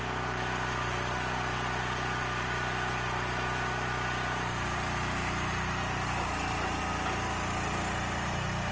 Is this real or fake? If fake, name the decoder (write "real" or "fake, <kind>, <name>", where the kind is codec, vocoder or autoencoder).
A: real